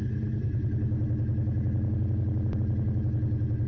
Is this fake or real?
real